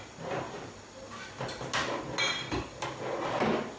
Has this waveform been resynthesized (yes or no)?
no